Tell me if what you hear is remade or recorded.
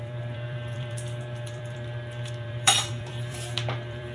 remade